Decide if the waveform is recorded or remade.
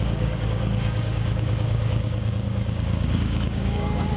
remade